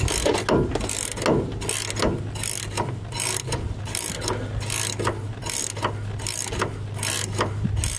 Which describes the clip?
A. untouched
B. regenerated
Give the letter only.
A